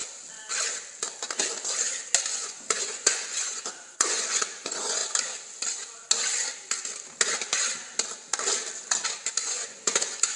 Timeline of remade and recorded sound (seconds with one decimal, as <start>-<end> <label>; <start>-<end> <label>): 0.0-2.3 recorded; 2.3-5.0 remade; 5.0-9.4 recorded; 9.4-10.4 remade

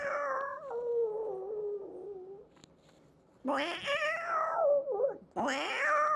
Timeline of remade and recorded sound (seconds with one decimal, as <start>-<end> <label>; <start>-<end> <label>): 0.0-6.2 recorded

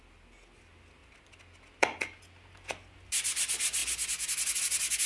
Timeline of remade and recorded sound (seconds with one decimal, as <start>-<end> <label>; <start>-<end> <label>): 0.0-5.1 recorded

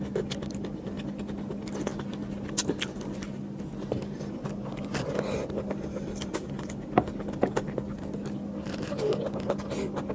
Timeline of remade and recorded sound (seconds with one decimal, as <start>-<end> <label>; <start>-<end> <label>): 0.0-10.1 recorded

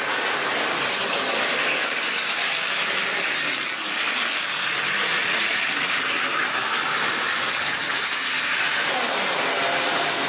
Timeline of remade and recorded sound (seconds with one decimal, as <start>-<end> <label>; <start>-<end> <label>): 0.0-5.1 recorded; 5.1-5.6 remade; 5.6-10.3 recorded

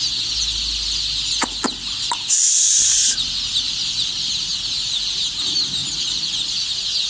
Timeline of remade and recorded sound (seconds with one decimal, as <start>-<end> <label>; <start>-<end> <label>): 0.0-7.1 recorded

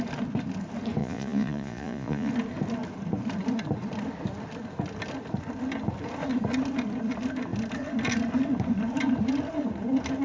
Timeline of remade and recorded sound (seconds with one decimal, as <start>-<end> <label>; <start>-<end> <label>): 0.0-1.0 recorded; 1.0-2.3 remade; 2.3-10.2 recorded